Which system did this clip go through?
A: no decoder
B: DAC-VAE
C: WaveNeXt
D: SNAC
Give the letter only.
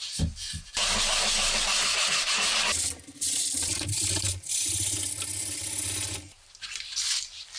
A